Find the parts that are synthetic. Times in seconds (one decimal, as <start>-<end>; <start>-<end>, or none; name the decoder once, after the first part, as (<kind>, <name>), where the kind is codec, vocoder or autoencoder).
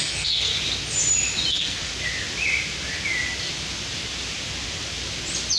0.0-0.5 (codec, SNAC); 1.5-1.9